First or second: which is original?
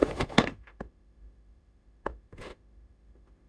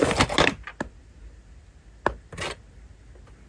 second